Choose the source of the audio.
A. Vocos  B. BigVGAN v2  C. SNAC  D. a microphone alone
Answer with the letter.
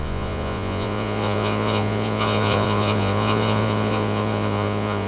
A